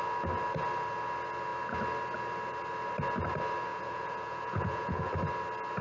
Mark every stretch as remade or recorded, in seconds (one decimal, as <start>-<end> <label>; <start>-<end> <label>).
0.0-3.7 recorded; 3.7-5.1 remade; 5.1-5.8 recorded